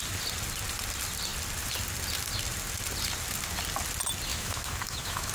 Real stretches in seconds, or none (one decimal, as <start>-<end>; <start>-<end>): 0.0-4.3